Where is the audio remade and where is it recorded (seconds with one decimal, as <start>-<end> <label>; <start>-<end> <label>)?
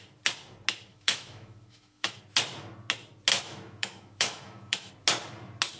0.0-0.9 recorded; 0.9-2.2 remade; 2.2-3.3 recorded; 3.3-4.9 remade; 4.9-5.8 recorded